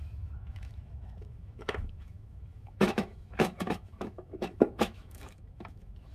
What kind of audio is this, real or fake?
fake